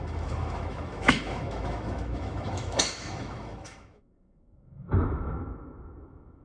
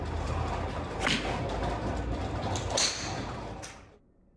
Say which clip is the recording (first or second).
second